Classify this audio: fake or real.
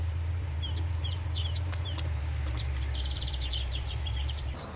fake